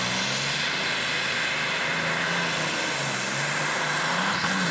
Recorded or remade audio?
recorded